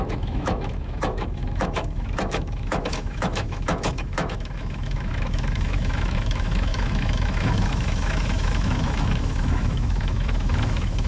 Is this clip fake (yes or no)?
yes